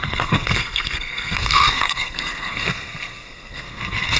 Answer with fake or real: fake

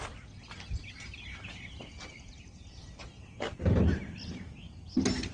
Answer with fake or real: real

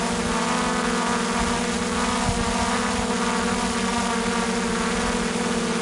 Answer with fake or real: real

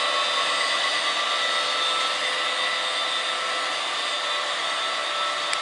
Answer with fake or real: real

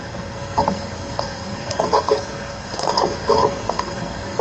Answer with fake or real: fake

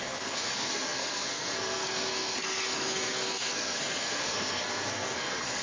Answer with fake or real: fake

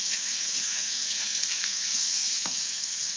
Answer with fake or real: fake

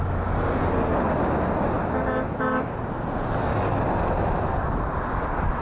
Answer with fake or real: real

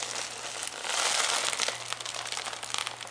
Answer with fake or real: real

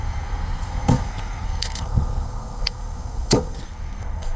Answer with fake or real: fake